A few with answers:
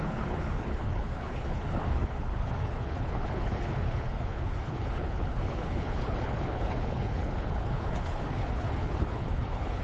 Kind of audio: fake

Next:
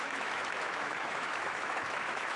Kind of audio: fake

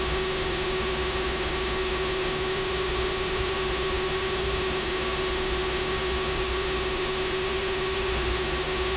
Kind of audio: fake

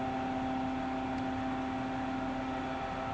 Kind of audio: real